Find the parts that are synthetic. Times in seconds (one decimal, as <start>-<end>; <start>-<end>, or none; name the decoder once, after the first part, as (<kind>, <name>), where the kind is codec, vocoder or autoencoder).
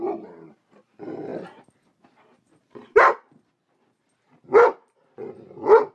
0.0-5.9 (vocoder, BigVGAN v2)